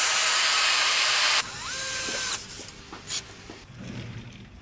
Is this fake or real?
fake